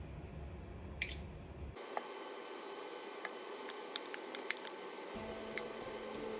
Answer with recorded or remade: recorded